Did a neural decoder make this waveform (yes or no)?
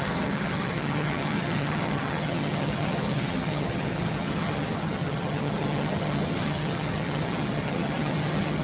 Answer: yes